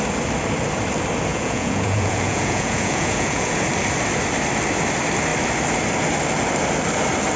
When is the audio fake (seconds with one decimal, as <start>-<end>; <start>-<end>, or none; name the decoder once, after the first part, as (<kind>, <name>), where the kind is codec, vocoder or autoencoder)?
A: 1.3-3.5 (vocoder, Vocos)